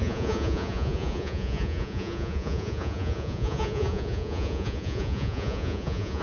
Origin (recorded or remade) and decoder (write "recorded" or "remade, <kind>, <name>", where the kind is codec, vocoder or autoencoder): remade, vocoder, Vocos